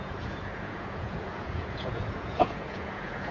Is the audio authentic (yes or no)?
no